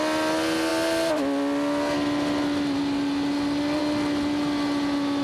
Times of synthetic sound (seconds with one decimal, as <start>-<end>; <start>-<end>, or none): none